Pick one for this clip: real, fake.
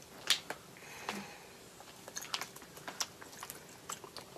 real